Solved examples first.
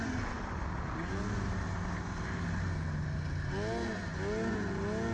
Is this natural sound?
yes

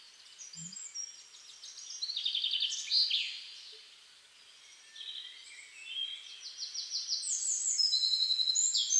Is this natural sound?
yes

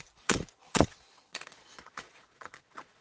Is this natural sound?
no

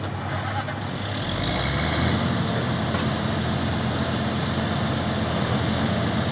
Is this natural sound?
yes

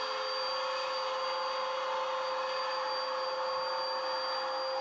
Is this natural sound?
yes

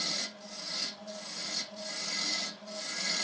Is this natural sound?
yes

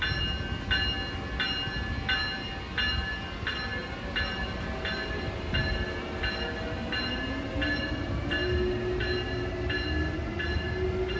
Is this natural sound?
yes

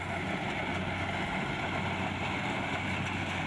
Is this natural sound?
yes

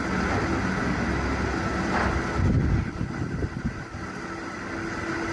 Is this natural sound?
yes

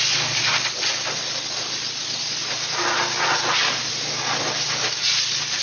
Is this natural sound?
yes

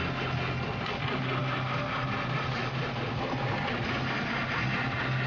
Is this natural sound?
yes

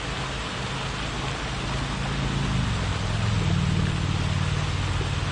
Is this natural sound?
yes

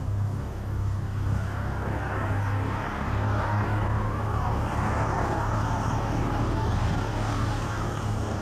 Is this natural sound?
no